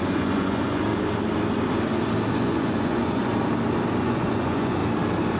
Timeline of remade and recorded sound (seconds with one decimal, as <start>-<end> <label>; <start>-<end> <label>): 0.0-0.9 remade; 0.9-2.3 recorded; 2.3-3.3 remade; 3.3-4.0 recorded; 4.0-4.8 remade; 4.8-5.4 recorded